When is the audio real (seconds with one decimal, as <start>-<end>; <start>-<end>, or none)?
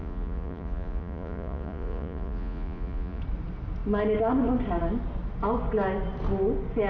3.2-6.9